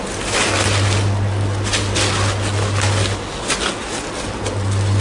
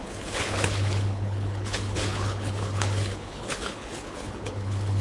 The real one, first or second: first